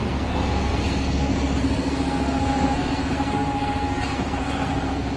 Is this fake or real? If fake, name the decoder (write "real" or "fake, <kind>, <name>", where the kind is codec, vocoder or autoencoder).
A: fake, codec, SNAC